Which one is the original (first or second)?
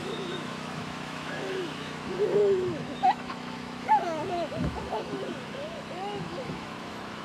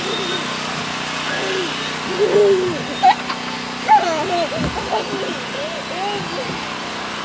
second